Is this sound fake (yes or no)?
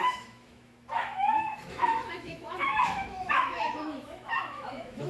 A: yes